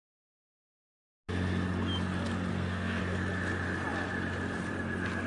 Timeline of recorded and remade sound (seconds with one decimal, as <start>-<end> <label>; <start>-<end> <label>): 0.0-2.5 recorded; 2.5-3.0 remade; 3.0-5.3 recorded